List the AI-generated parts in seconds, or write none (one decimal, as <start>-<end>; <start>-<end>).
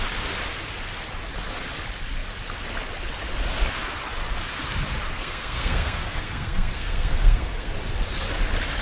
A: 5.1-7.7